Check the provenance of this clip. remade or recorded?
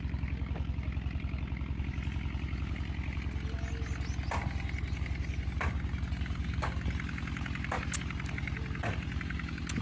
recorded